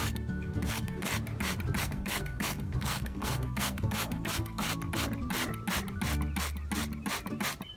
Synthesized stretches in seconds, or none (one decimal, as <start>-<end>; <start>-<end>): 0.0-1.1; 1.8-4.7